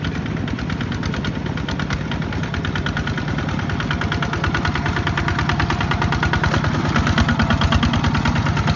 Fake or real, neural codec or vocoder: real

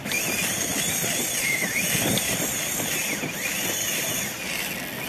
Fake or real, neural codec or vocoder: real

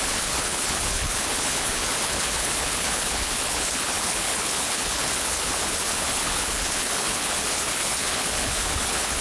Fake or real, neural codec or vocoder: fake, codec, HILCodec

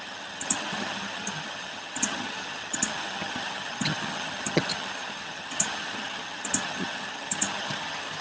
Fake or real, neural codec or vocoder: fake, vocoder, HiFi-GAN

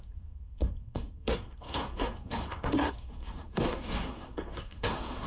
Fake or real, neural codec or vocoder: fake, codec, SNAC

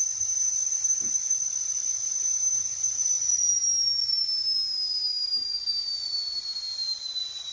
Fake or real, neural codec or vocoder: real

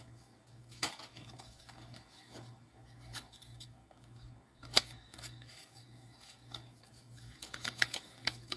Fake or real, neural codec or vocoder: fake, codec, DAC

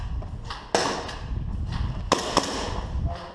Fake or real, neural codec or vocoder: real